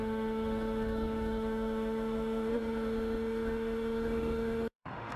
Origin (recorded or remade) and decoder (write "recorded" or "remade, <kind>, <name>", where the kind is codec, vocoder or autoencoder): remade, autoencoder, DAC-VAE